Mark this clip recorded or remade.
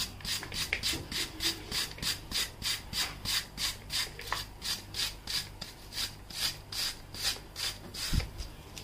recorded